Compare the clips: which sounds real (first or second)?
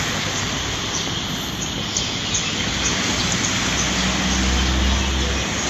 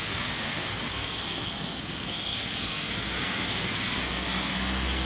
first